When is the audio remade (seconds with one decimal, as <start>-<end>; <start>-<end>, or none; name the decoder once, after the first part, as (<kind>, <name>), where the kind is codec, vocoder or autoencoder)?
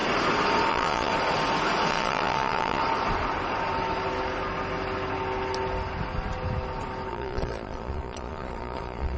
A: 0.7-1.1 (vocoder, Vocos); 1.9-2.8; 7.1-9.2